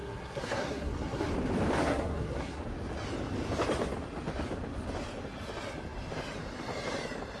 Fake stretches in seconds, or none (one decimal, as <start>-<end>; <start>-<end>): 0.0-1.3; 1.8-2.6